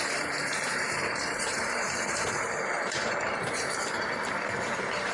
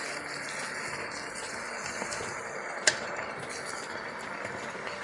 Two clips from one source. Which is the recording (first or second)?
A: second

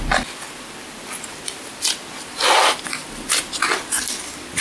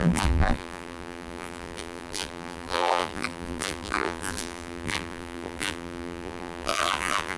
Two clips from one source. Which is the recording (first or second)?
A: first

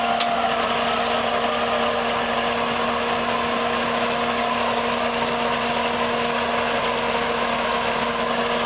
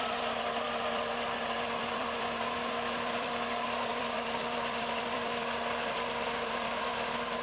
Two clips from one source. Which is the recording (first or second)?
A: first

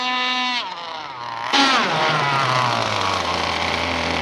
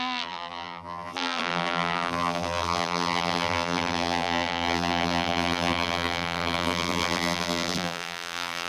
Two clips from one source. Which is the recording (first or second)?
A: first